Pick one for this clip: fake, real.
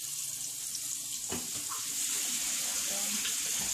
real